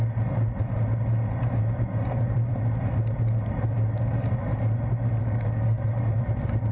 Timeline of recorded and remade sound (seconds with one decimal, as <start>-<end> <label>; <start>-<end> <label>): 0.0-5.2 recorded; 5.2-5.8 remade; 5.8-6.7 recorded